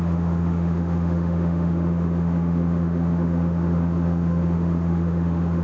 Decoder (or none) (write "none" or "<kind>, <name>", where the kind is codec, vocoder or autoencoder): autoencoder, DAC-VAE